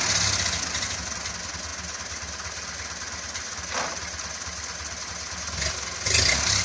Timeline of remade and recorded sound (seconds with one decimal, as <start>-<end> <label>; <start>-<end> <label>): 0.0-6.6 recorded

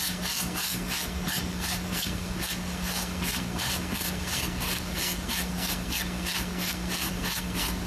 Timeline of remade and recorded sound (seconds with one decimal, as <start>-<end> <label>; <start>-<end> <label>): 0.0-7.9 remade

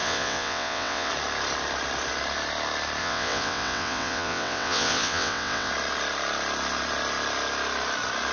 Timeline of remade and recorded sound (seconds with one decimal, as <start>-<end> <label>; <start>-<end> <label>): 0.0-1.1 remade; 1.1-3.0 recorded; 3.0-5.7 remade; 5.7-8.3 recorded

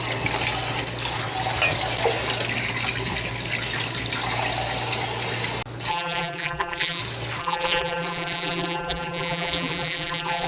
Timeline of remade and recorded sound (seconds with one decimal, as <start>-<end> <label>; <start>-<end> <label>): 0.0-5.9 recorded; 5.9-7.0 remade; 7.0-7.4 recorded; 7.4-10.5 remade

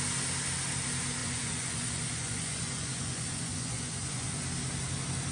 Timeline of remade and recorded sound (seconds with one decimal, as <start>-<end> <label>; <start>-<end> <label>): 0.0-1.2 recorded; 1.2-4.4 remade; 4.4-5.3 recorded

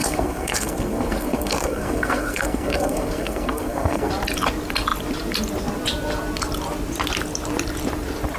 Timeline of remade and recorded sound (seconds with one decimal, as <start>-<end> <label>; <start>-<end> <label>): 0.0-4.1 remade; 4.1-8.4 recorded

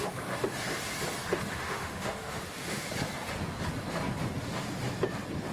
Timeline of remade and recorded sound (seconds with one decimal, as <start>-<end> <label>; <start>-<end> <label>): 0.0-1.5 recorded; 1.5-2.9 remade; 2.9-5.5 recorded